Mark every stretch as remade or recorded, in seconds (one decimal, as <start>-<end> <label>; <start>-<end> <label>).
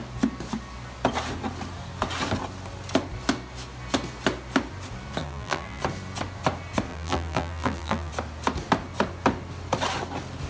0.0-5.2 recorded; 5.2-5.8 remade; 5.8-6.9 recorded; 6.9-8.1 remade; 8.1-10.5 recorded